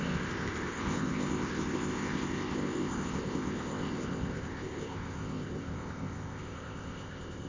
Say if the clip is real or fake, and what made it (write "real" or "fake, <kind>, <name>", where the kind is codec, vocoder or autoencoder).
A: fake, codec, ZipCodec